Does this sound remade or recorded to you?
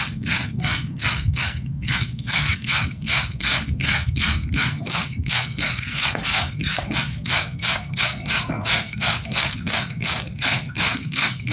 remade